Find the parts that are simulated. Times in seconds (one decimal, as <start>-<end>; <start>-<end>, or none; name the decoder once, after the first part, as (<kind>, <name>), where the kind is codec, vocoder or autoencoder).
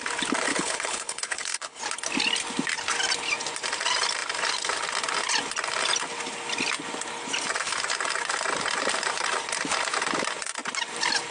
0.5-1.8 (codec, HILCodec)